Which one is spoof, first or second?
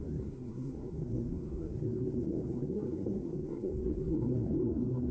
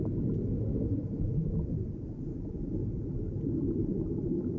first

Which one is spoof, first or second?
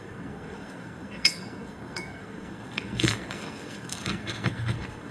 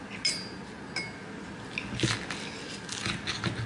first